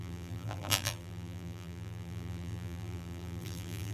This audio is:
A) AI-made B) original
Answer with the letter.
A